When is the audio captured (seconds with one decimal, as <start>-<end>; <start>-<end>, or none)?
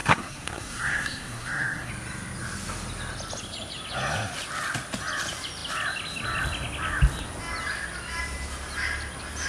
1.9-9.5